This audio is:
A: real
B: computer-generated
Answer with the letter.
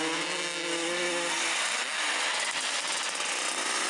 A